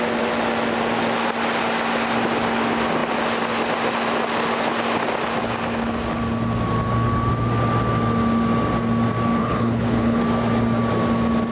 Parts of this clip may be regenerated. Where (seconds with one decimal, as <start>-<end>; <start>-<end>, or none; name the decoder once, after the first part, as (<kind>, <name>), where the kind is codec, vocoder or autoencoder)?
9.4-10.2 (codec, HILCodec)

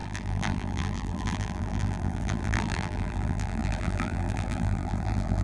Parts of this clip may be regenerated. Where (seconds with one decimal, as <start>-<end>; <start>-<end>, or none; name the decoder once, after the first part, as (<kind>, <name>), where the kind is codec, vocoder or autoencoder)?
0.0-5.4 (vocoder, BigVGAN v2)

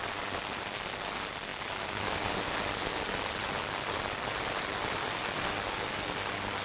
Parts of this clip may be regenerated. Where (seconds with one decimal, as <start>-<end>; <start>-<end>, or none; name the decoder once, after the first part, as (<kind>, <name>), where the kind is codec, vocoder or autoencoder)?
none

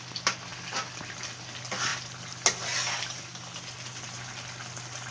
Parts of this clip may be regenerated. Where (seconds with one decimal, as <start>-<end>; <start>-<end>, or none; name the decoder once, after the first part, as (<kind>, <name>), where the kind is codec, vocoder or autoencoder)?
none

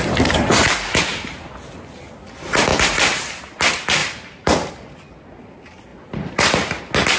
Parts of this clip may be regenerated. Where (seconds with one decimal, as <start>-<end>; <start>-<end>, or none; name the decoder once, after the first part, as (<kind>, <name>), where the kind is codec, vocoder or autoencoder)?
4.0-4.7 (vocoder, BigVGAN v2); 5.9-6.8